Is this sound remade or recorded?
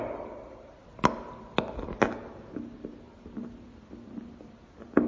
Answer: recorded